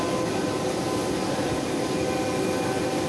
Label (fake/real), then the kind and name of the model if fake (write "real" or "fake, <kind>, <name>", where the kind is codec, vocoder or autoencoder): real